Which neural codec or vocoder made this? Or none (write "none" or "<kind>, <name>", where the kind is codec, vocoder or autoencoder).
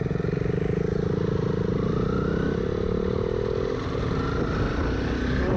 none